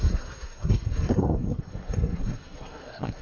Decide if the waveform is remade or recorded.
remade